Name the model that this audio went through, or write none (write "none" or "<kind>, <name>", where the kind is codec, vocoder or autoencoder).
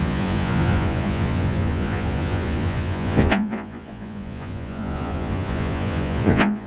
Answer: vocoder, Vocos